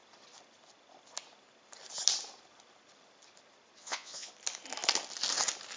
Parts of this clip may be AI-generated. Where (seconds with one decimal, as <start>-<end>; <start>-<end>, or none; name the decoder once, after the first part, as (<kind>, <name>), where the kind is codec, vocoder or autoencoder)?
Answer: 3.8-4.3 (vocoder, Vocos)